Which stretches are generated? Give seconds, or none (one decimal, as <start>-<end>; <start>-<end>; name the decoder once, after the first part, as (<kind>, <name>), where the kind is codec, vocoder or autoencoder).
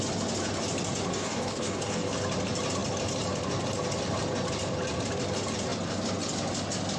1.1-2.1 (codec, DAC)